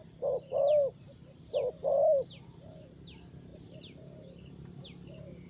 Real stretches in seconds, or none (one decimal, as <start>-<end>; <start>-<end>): 0.0-5.5